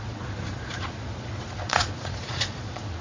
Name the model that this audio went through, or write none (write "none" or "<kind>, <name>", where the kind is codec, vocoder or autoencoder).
vocoder, Vocos